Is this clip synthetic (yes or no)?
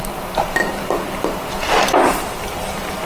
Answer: no